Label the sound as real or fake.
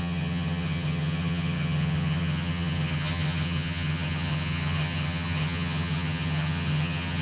fake